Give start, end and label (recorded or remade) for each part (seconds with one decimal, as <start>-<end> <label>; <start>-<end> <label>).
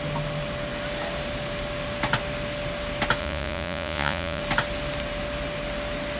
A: 0.0-3.2 recorded; 3.2-4.4 remade; 4.4-6.2 recorded